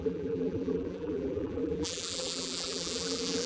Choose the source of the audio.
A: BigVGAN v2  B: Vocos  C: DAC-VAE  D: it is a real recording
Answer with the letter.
A